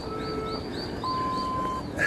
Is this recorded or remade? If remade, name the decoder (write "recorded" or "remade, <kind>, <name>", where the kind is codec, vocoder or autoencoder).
recorded